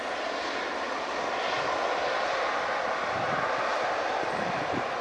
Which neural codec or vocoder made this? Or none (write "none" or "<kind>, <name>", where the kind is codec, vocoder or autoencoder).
none